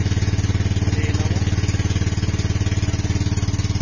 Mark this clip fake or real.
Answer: real